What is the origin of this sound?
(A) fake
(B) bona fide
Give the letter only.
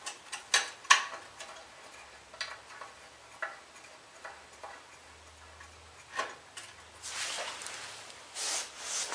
B